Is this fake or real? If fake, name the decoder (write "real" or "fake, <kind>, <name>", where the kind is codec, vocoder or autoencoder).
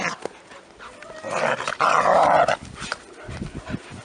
real